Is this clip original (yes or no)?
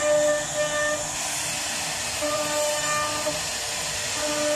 yes